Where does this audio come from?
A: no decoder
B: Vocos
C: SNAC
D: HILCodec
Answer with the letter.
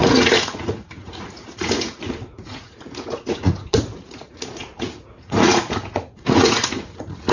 B